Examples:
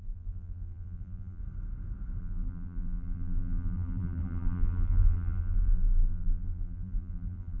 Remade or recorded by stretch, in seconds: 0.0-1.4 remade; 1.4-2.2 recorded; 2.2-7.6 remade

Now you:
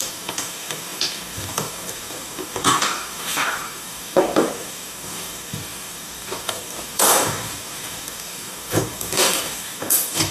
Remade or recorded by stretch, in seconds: 0.0-10.3 remade

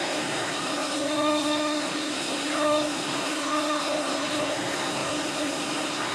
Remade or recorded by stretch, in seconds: 0.0-6.1 remade

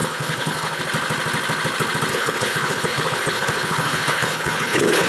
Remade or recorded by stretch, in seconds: 0.0-0.8 remade; 0.8-2.1 recorded; 2.1-5.1 remade

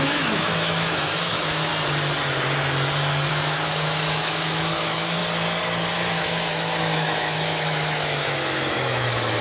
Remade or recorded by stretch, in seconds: 0.0-1.7 remade; 1.7-3.3 recorded; 3.3-5.2 remade; 5.2-5.9 recorded; 5.9-9.4 remade

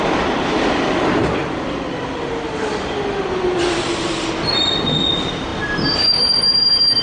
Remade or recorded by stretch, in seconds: 0.0-7.0 recorded

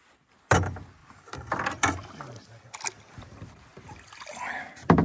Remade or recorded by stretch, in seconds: 0.0-1.0 recorded; 1.0-1.5 remade; 1.5-5.0 recorded

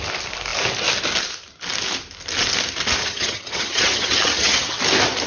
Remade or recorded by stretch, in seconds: 0.0-3.0 recorded; 3.0-4.8 remade; 4.8-5.3 recorded